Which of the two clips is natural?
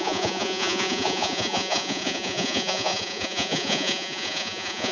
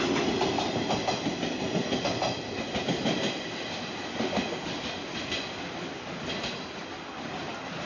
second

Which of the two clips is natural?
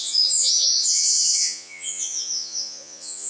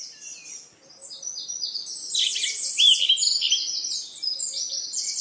second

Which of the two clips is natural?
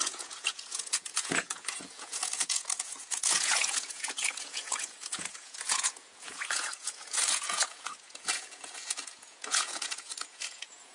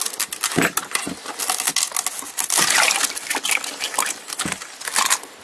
second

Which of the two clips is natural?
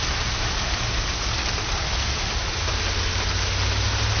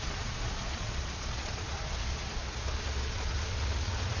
first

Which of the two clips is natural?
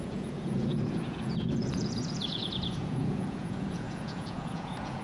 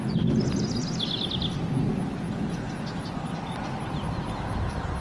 second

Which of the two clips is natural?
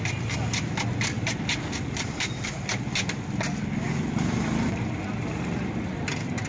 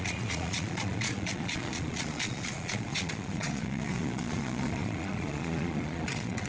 first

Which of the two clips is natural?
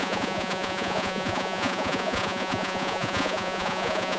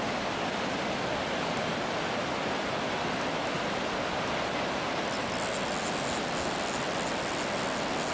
second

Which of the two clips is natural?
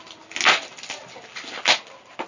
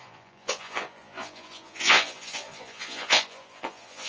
first